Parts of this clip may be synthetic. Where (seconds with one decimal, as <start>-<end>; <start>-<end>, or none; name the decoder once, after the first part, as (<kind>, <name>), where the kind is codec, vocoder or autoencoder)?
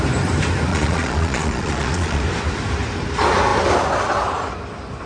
0.7-2.2 (vocoder, Vocos)